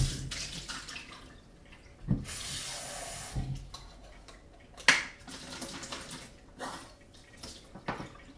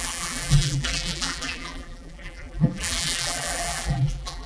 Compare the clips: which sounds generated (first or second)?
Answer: second